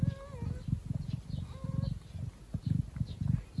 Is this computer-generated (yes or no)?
no